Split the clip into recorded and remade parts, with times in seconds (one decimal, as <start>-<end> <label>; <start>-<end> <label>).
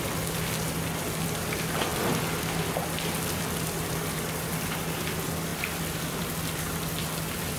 0.0-7.6 recorded